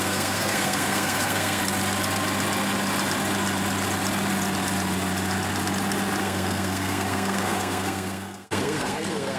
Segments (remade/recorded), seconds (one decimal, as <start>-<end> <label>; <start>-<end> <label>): 0.0-1.6 remade; 1.6-6.2 recorded; 6.2-9.4 remade